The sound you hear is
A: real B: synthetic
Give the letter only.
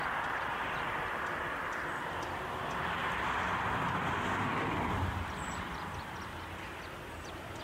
A